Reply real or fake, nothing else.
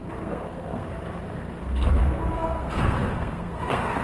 fake